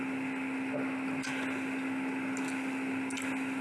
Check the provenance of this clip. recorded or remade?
recorded